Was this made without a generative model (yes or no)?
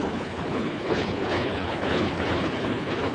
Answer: no